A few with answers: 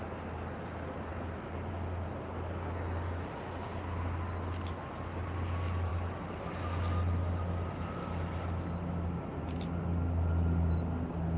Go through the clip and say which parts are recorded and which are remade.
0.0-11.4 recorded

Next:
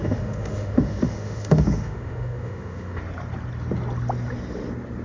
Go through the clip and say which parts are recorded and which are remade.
0.0-3.0 remade; 3.0-5.0 recorded

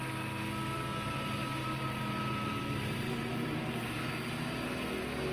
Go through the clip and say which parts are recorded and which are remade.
0.0-0.9 recorded; 0.9-4.1 remade; 4.1-5.3 recorded

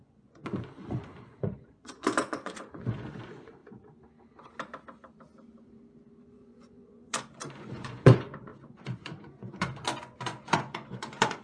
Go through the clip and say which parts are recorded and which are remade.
0.0-3.6 remade; 3.6-6.2 recorded; 6.2-11.4 remade

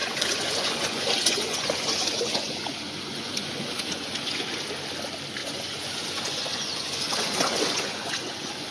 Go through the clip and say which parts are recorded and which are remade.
0.0-4.6 remade; 4.6-5.4 recorded; 5.4-8.7 remade

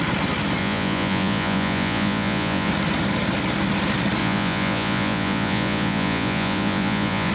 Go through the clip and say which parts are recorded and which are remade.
0.0-0.6 recorded; 0.6-2.7 remade; 2.7-4.2 recorded; 4.2-7.3 remade

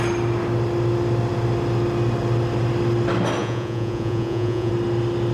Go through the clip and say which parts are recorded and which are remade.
0.0-3.4 recorded; 3.4-4.7 remade; 4.7-5.3 recorded